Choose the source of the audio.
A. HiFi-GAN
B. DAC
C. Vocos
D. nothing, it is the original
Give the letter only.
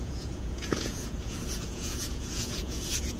C